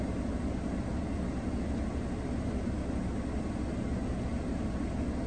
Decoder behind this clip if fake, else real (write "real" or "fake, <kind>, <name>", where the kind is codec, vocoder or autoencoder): real